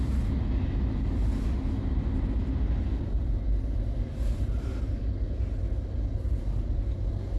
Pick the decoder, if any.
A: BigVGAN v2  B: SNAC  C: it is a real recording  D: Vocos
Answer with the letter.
C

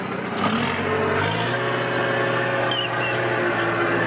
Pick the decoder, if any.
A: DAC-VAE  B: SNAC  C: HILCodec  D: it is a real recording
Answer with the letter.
D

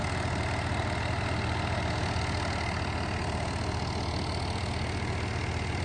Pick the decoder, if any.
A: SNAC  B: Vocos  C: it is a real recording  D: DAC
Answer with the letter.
C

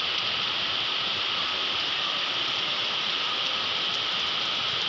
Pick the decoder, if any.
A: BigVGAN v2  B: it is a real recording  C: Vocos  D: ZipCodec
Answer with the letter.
B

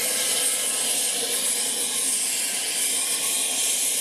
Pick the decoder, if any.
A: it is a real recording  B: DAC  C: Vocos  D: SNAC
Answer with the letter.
A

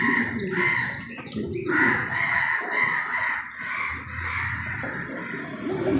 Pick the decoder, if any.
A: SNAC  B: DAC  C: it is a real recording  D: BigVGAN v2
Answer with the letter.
D